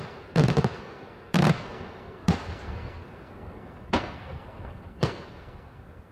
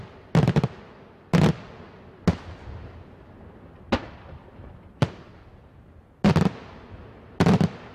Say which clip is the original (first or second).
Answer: second